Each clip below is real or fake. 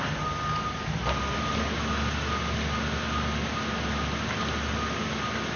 real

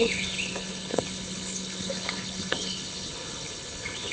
fake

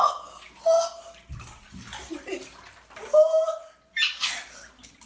real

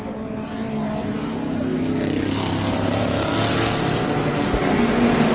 real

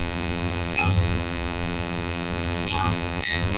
fake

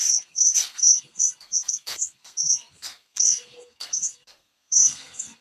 fake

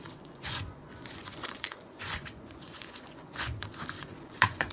fake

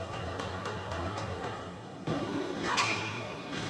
fake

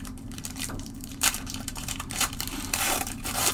fake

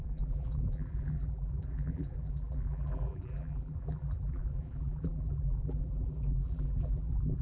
fake